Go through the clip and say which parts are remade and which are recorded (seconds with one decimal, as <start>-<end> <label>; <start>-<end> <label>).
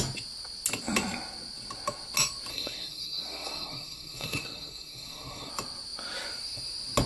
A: 0.0-2.5 recorded; 2.5-5.5 remade; 5.5-7.1 recorded